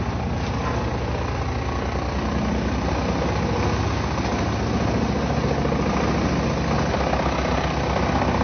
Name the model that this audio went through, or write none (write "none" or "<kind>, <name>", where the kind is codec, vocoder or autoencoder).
none